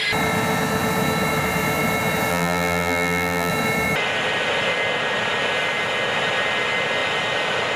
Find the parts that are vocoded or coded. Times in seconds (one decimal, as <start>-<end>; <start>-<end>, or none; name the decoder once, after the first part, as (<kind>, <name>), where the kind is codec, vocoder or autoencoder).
2.3-3.5 (vocoder, BigVGAN v2)